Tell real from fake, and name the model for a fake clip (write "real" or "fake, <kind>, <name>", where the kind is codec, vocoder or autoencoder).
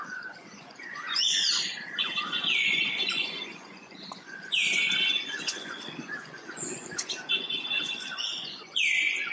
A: fake, vocoder, Vocos